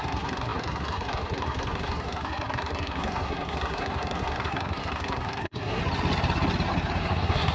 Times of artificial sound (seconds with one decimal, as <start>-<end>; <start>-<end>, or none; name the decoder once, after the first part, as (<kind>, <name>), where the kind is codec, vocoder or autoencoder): 0.0-5.8 (codec, SNAC); 7.0-7.5